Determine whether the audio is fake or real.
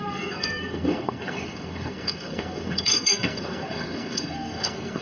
fake